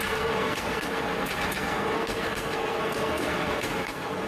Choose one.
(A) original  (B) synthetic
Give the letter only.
B